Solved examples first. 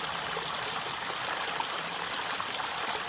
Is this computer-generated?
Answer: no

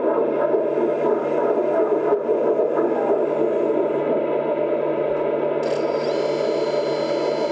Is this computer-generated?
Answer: no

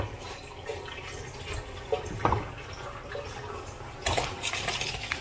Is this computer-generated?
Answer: no